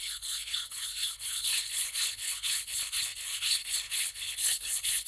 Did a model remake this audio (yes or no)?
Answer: yes